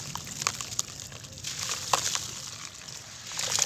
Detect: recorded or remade recorded